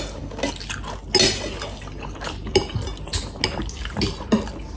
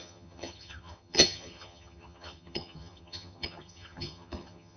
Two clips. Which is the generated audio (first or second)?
second